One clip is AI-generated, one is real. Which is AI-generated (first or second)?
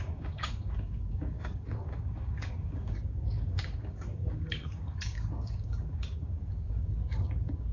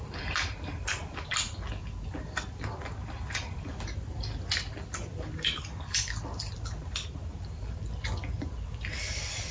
first